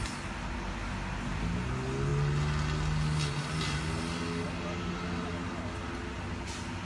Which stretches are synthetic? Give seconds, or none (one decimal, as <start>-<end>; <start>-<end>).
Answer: none